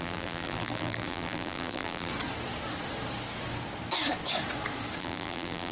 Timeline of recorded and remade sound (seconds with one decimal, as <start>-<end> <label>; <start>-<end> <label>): 0.0-2.1 remade; 2.1-5.0 recorded; 5.0-5.7 remade